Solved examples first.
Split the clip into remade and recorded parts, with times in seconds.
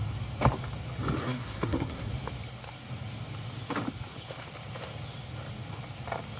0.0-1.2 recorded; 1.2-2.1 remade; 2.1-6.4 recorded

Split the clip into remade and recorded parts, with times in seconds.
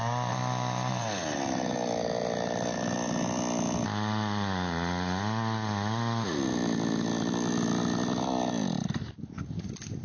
0.0-10.0 recorded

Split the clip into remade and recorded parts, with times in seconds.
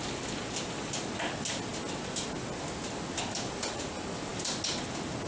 0.0-5.3 recorded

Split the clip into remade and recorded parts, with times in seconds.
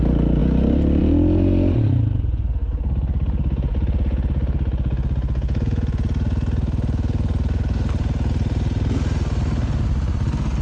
0.0-10.6 recorded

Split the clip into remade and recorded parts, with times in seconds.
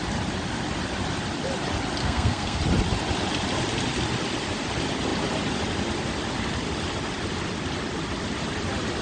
0.0-2.0 recorded; 2.0-2.6 remade; 2.6-9.0 recorded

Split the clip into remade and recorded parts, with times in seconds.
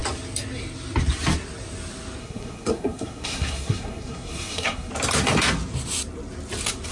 0.0-2.2 recorded; 2.2-4.9 remade; 4.9-6.9 recorded